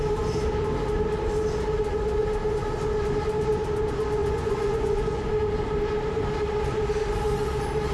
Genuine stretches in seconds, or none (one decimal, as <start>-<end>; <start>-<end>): 0.0-4.2; 5.3-7.9